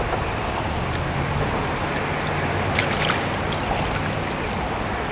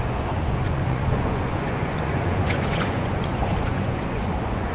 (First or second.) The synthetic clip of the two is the second